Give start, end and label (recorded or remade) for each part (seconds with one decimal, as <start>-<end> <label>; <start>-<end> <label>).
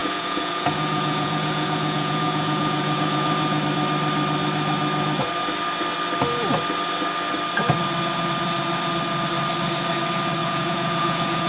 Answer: 0.0-3.6 remade; 3.6-10.4 recorded; 10.4-11.5 remade